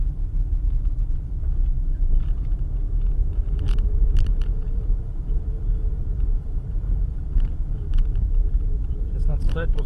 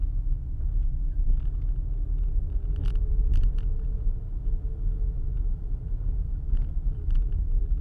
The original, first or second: second